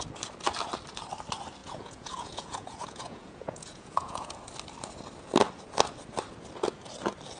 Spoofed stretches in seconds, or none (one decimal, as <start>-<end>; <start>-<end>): 1.6-4.3